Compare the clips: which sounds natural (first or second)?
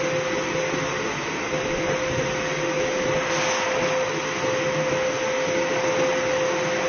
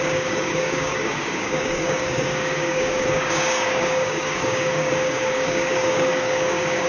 first